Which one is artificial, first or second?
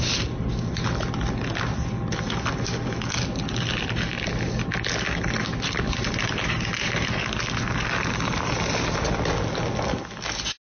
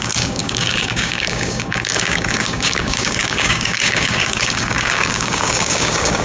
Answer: second